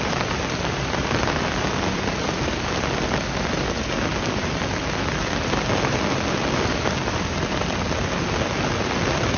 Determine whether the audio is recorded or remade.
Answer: recorded